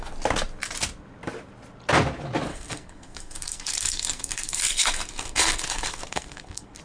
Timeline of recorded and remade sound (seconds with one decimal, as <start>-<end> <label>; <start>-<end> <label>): 0.0-2.5 recorded; 2.5-6.8 remade